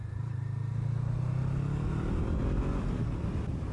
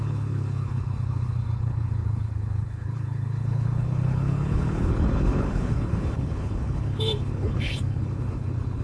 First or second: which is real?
first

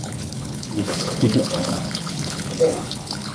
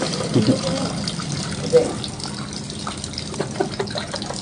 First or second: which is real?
second